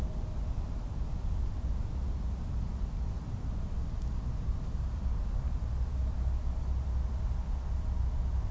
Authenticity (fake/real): real